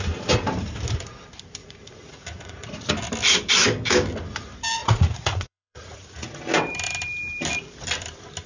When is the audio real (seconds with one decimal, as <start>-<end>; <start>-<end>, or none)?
0.0-1.6; 2.9-4.8; 6.4-8.5